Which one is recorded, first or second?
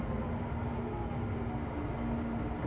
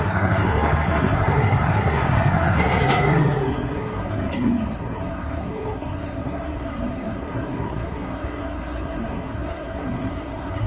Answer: first